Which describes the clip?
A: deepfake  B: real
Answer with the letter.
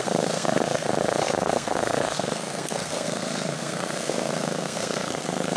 A